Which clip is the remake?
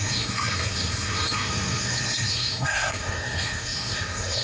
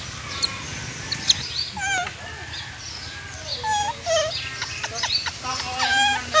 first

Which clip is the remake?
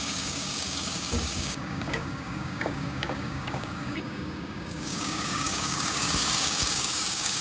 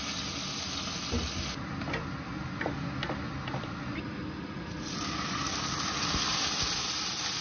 first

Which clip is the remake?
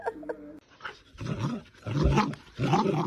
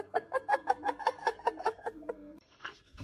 second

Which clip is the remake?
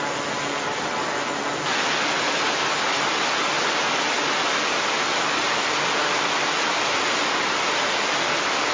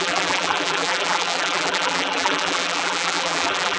second